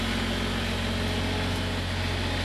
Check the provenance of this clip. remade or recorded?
recorded